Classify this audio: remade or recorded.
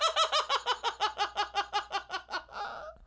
recorded